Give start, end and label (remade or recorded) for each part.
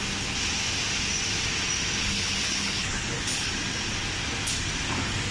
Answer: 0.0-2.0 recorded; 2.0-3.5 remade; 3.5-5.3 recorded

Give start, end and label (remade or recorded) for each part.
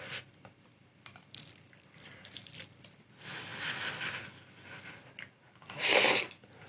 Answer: 0.0-0.7 recorded; 0.7-3.1 remade; 3.1-6.7 recorded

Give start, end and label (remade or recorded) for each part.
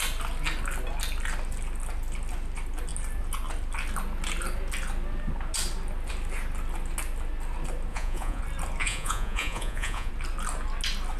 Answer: 0.0-7.9 recorded; 7.9-8.4 remade; 8.4-8.8 recorded; 8.8-10.1 remade; 10.1-11.2 recorded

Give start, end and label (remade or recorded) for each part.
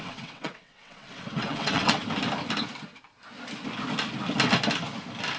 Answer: 0.0-2.0 remade; 2.0-5.4 recorded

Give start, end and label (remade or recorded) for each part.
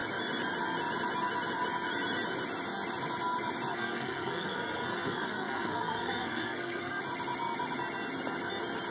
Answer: 0.0-3.7 recorded; 3.7-7.0 remade; 7.0-8.9 recorded